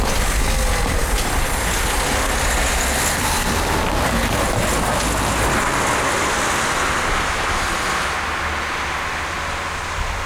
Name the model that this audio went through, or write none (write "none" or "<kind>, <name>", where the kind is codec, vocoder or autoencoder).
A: none